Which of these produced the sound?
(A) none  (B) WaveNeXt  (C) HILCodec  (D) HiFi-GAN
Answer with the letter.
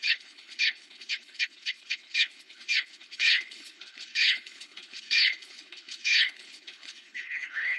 C